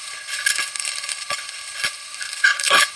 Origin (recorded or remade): remade